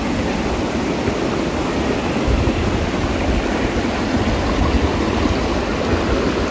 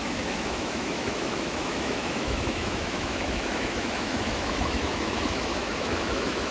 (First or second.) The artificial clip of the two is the second